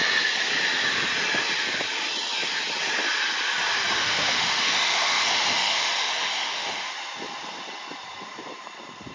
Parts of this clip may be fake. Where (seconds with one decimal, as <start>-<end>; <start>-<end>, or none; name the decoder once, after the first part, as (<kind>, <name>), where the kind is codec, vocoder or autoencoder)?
4.0-6.9 (autoencoder, DAC-VAE)